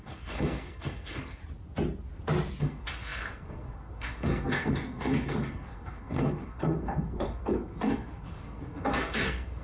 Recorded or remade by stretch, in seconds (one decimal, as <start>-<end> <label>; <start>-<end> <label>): 0.0-1.4 remade; 1.4-2.6 recorded; 2.6-9.6 remade